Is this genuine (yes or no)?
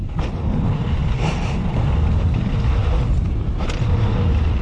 yes